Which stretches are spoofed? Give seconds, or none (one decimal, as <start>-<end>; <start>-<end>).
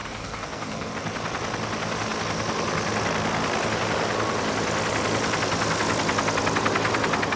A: 0.0-0.9